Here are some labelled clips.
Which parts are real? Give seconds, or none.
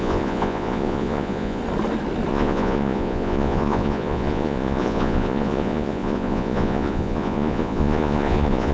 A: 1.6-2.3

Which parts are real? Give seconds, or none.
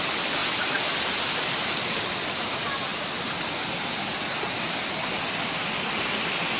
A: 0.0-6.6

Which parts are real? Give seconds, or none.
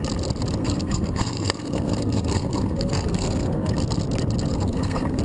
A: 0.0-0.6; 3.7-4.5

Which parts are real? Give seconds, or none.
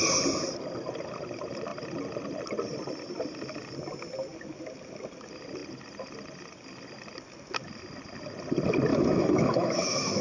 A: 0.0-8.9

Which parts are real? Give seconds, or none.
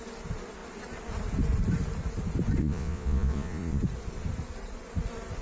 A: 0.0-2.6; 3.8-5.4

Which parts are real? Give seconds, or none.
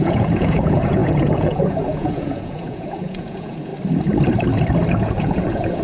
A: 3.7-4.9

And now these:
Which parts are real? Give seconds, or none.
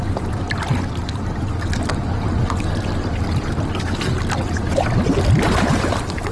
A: 0.0-6.3